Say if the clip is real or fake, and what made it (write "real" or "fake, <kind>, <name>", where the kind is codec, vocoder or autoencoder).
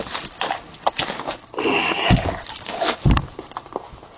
real